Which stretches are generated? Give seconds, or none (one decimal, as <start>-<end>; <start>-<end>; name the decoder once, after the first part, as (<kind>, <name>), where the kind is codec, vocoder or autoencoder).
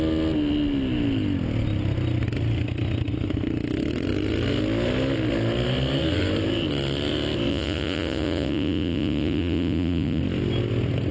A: 7.5-10.2 (vocoder, Vocos)